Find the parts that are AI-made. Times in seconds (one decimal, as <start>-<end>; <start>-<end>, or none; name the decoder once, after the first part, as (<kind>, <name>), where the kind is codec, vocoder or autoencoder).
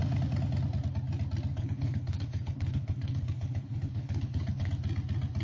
1.5-4.7 (codec, HILCodec)